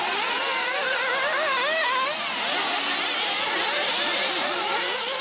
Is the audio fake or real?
real